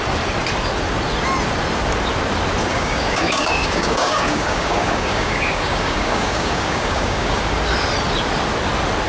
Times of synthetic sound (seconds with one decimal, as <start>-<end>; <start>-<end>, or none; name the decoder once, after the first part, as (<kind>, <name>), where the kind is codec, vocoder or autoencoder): 2.6-7.4 (codec, DAC)